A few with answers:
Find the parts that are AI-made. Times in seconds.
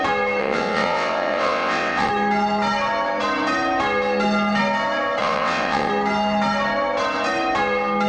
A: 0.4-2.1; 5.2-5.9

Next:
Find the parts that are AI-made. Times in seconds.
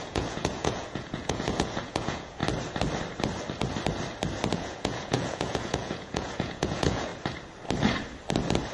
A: 0.0-2.4; 4.5-7.1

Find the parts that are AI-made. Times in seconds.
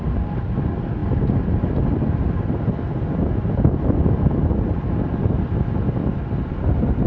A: none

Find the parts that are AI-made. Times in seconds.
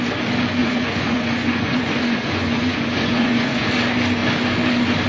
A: 0.6-3.7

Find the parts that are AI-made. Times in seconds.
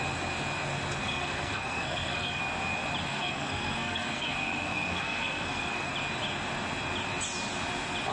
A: 1.0-2.4; 3.1-5.9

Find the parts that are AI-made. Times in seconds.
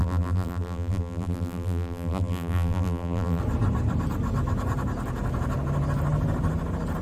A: 0.0-3.4